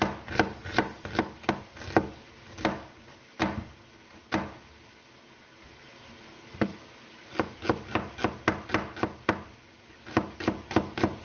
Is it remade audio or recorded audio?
recorded